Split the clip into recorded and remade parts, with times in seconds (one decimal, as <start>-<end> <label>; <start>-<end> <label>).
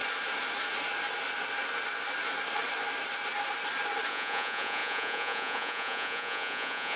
0.0-4.1 recorded; 4.1-7.0 remade